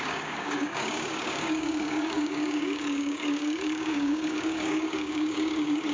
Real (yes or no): no